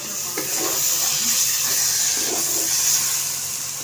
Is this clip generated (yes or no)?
no